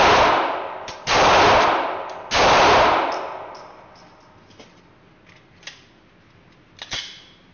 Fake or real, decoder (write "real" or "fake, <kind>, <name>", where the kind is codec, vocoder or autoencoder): real